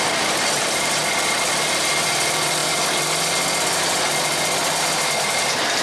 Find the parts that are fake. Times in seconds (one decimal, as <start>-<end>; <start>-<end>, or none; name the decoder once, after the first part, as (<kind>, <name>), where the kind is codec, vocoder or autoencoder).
none